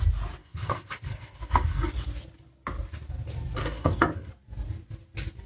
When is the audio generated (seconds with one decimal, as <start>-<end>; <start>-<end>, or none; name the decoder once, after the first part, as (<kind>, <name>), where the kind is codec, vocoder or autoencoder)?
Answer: 0.4-1.9 (codec, SNAC); 3.6-4.3